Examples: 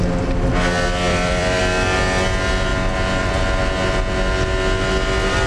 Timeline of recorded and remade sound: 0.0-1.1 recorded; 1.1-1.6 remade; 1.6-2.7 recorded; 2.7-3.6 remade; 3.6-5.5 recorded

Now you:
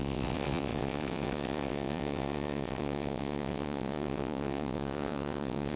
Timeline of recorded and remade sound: 0.0-5.8 remade

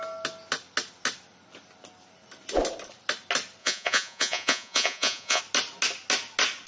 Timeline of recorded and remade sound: 0.0-3.6 recorded; 3.6-5.4 remade; 5.4-6.7 recorded